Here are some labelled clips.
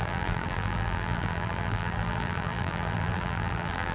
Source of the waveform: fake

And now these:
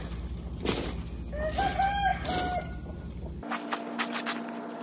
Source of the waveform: real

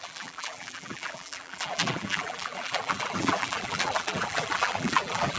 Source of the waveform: fake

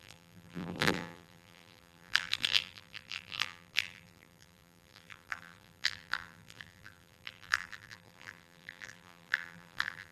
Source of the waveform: fake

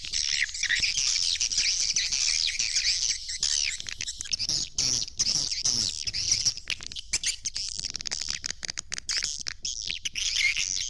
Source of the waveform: real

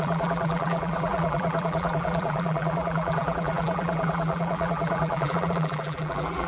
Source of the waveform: fake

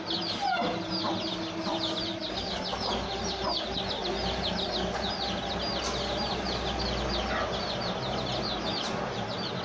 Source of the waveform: real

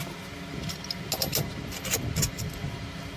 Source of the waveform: real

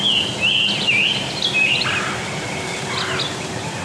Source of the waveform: real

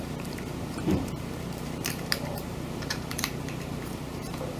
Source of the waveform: fake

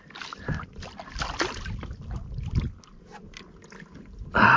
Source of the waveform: real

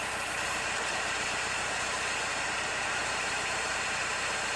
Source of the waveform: fake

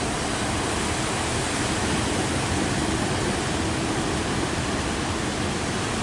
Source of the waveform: real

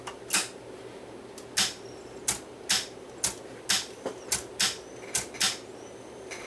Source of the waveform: real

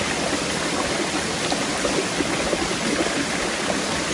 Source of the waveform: real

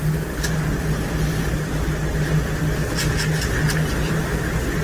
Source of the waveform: real